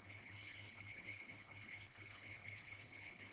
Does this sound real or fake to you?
fake